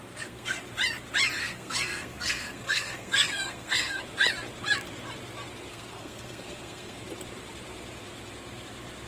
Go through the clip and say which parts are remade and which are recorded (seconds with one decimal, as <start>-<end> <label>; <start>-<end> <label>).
0.0-0.6 remade; 0.6-1.4 recorded; 1.4-4.0 remade; 4.0-5.7 recorded; 5.7-7.0 remade; 7.0-9.1 recorded

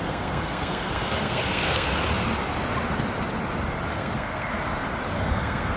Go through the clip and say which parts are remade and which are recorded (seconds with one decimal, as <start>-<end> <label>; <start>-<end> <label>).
0.0-1.9 remade; 1.9-3.9 recorded; 3.9-4.5 remade; 4.5-5.2 recorded; 5.2-5.8 remade

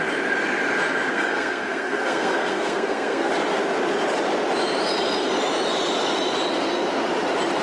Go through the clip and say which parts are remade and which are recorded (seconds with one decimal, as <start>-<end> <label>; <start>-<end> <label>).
0.0-1.1 recorded; 1.1-3.3 remade; 3.3-7.6 recorded

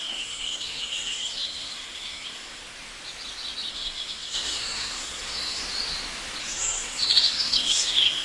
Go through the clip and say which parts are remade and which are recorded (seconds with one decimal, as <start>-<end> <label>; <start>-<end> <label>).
0.0-2.6 remade; 2.6-3.7 recorded; 3.7-5.6 remade; 5.6-6.4 recorded; 6.4-8.2 remade